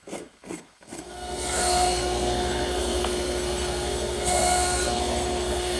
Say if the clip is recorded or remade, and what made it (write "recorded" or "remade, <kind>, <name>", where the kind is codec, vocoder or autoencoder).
remade, codec, SNAC